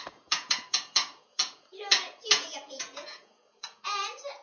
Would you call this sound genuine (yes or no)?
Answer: no